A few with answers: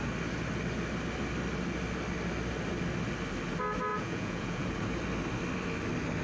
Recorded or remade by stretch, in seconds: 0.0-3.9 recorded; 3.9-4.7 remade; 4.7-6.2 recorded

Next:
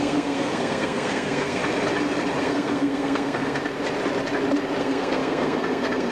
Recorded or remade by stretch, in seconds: 0.0-1.6 remade; 1.6-2.4 recorded; 2.4-3.6 remade; 3.6-4.8 recorded; 4.8-6.1 remade

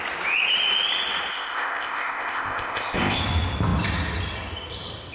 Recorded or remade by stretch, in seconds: 0.0-1.3 recorded; 1.3-3.2 remade; 3.2-5.1 recorded